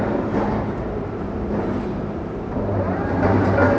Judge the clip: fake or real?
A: fake